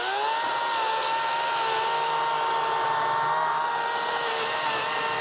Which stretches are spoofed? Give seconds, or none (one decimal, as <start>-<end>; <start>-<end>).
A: none